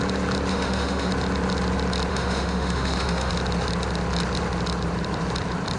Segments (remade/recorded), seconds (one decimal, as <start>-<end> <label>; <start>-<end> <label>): 0.0-0.5 recorded; 0.5-1.1 remade; 1.1-2.1 recorded; 2.1-3.3 remade; 3.3-5.8 recorded